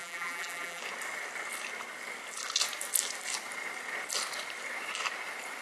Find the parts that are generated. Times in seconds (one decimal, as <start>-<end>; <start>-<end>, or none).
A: 0.0-0.8